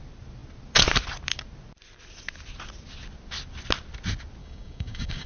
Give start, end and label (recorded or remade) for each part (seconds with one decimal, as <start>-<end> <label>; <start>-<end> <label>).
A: 0.0-4.4 recorded; 4.4-5.3 remade